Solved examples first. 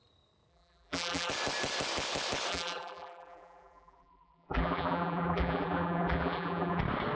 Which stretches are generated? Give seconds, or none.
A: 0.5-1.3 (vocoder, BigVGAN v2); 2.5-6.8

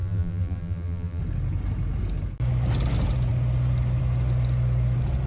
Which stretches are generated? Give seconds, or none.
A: 0.0-1.2 (vocoder, BigVGAN v2)

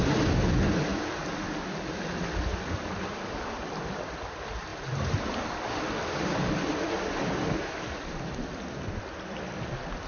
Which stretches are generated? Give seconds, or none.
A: 0.9-2.0 (vocoder, BigVGAN v2); 4.7-9.0

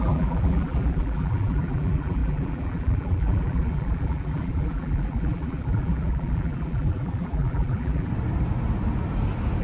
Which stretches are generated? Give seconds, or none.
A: 0.0-8.1 (vocoder, BigVGAN v2)

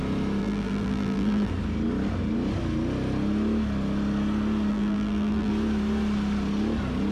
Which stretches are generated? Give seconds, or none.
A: 0.4-1.5 (vocoder, BigVGAN v2); 4.7-5.5

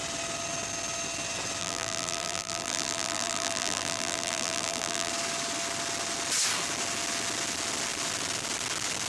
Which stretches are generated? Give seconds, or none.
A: 1.6-5.1 (vocoder, BigVGAN v2)

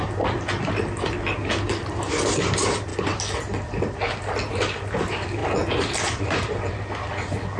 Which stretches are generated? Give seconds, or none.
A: 5.4-6.7 (vocoder, BigVGAN v2)